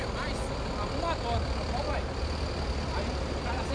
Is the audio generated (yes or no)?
no